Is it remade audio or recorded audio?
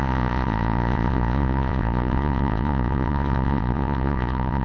remade